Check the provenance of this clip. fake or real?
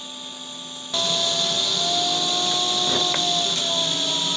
real